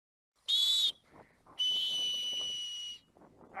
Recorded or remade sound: recorded